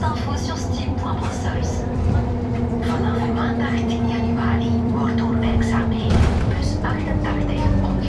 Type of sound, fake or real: fake